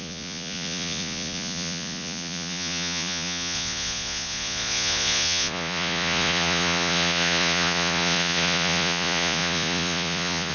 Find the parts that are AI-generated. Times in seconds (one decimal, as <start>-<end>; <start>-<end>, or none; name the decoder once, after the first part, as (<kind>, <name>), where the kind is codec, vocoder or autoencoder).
0.0-10.5 (vocoder, Vocos)

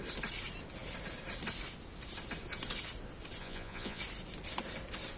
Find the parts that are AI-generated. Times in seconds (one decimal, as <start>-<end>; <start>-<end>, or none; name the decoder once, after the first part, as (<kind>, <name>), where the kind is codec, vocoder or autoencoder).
3.4-4.0 (vocoder, Vocos)

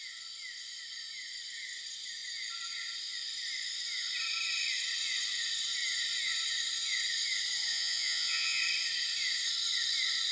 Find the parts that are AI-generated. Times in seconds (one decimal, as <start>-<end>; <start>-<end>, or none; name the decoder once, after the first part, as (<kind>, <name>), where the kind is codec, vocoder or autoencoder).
7.7-8.6 (vocoder, Vocos)

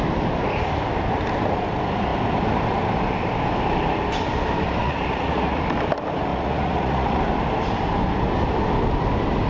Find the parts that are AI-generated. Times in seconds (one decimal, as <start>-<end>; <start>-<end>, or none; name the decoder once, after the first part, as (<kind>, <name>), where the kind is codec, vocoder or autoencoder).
4.8-5.6 (vocoder, Vocos); 6.3-7.2

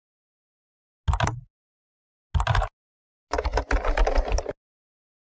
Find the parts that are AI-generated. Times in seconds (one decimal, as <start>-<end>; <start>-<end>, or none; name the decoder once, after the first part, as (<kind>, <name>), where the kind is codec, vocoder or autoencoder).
none